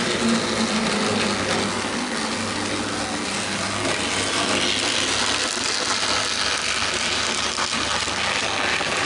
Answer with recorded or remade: recorded